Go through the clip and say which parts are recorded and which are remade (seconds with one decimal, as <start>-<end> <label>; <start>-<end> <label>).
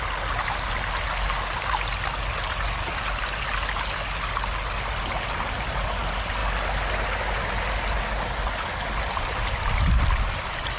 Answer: 0.0-10.8 recorded